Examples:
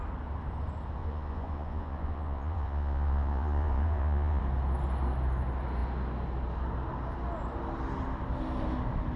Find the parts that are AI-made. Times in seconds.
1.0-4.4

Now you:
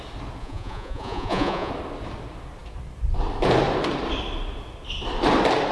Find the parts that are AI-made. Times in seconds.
0.4-1.7

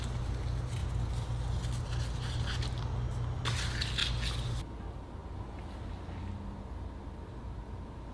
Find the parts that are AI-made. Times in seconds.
none

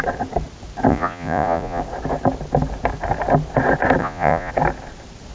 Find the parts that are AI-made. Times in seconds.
0.9-1.8; 4.0-4.5

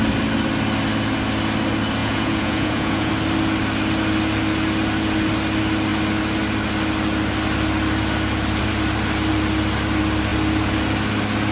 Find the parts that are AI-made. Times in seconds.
2.0-3.1